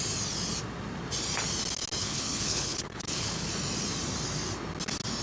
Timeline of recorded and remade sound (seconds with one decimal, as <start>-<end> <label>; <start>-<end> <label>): 0.0-2.0 recorded; 2.0-3.5 remade; 3.5-5.2 recorded